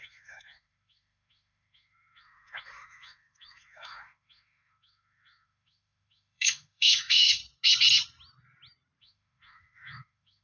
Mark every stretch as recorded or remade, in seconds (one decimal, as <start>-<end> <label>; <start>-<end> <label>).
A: 0.0-7.4 remade; 7.4-9.0 recorded; 9.0-10.4 remade